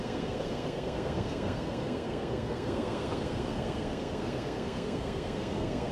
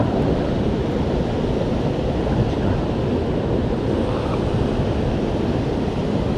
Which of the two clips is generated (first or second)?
first